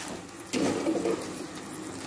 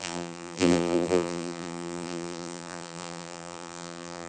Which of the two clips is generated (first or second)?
second